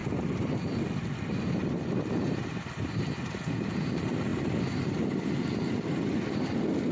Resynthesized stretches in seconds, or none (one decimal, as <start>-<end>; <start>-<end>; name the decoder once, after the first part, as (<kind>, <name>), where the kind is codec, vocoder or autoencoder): none